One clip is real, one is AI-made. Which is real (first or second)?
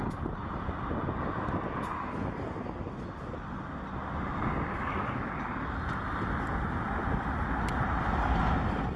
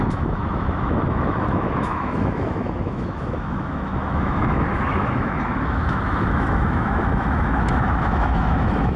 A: first